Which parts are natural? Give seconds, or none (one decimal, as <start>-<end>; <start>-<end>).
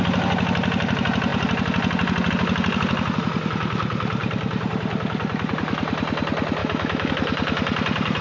0.0-6.6; 7.1-8.2